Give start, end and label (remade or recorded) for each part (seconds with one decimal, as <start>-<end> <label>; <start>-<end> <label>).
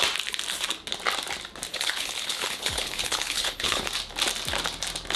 0.0-1.7 recorded; 1.7-3.9 remade; 3.9-5.2 recorded